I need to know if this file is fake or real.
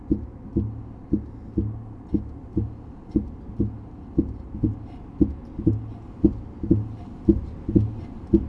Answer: real